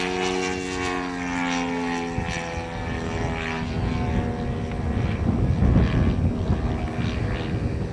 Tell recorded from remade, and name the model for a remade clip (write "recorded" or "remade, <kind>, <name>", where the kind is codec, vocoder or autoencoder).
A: recorded